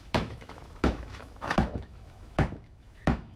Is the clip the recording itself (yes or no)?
no